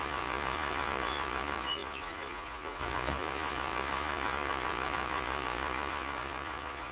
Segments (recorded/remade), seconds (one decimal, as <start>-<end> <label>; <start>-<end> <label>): 0.0-6.9 remade

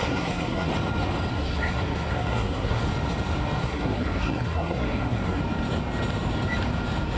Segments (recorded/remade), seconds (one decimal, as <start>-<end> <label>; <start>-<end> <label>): 0.0-0.7 remade; 0.7-1.3 recorded; 1.3-2.8 remade; 2.8-3.6 recorded; 3.6-5.4 remade; 5.4-7.2 recorded